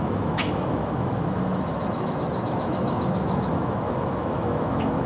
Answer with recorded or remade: remade